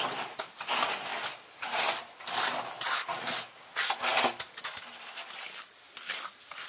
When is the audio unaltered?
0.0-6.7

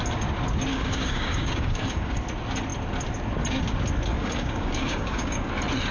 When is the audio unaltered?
0.0-0.7; 2.2-4.1; 5.5-5.9

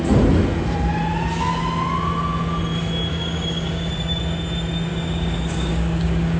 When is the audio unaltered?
0.0-3.1; 4.2-4.9

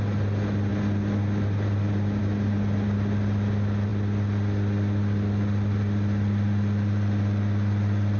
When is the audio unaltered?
0.0-8.2

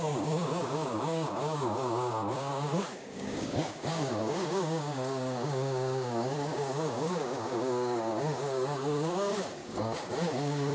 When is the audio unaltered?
none

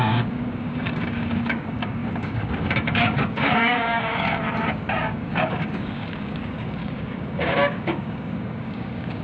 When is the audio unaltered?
4.4-5.0

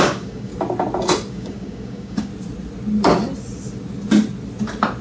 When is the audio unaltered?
0.5-1.3; 2.3-5.0

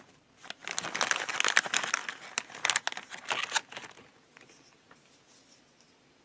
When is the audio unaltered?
0.0-6.2